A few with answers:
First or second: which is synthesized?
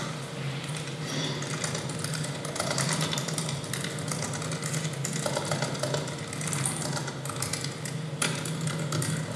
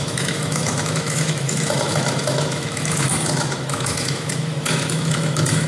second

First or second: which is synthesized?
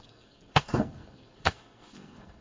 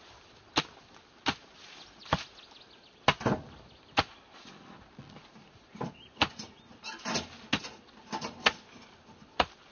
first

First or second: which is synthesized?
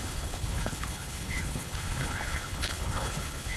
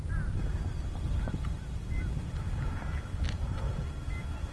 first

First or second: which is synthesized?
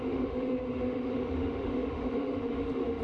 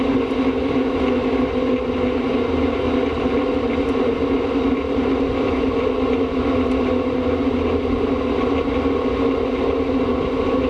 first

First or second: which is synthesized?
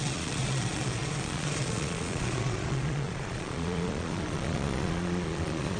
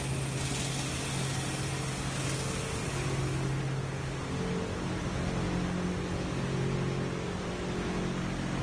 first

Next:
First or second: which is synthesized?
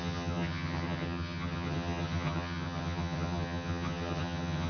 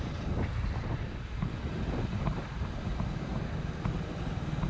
first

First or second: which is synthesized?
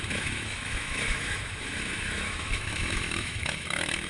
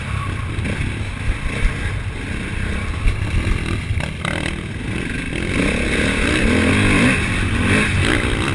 first